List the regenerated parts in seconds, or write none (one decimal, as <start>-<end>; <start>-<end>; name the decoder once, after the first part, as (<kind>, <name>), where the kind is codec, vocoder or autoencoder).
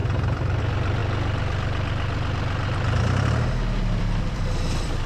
0.0-1.0 (vocoder, BigVGAN v2); 3.8-5.1